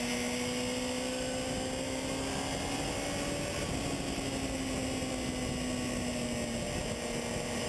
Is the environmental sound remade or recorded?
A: recorded